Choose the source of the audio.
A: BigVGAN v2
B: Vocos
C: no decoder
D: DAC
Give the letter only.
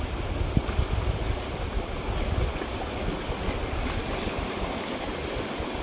C